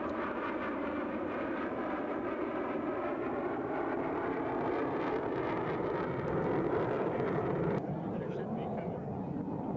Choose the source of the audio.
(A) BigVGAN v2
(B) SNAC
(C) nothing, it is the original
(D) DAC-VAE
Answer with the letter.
A